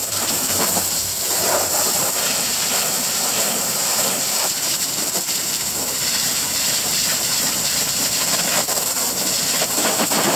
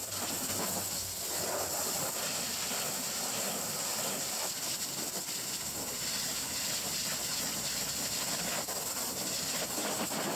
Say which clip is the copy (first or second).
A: first